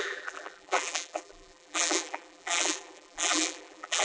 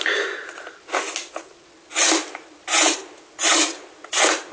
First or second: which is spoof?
first